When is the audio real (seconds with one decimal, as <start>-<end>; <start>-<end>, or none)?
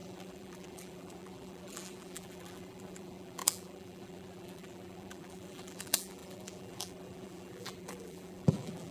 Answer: none